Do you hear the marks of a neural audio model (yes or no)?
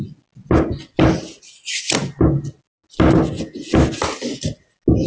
no